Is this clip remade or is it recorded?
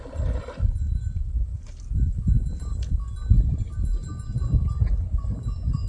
recorded